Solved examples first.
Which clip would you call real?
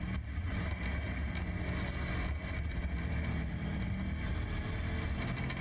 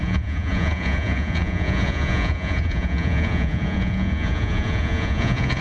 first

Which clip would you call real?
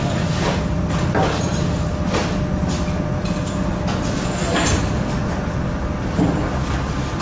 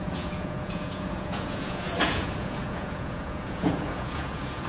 first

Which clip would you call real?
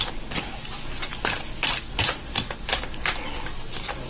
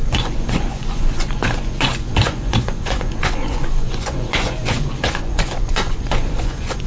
first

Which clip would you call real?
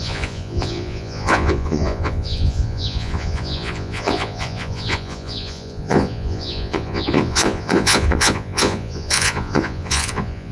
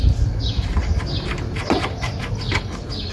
second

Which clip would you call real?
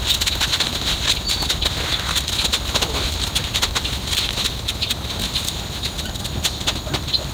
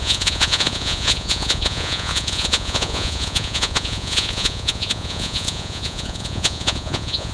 first